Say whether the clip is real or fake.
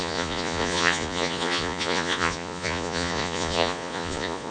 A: fake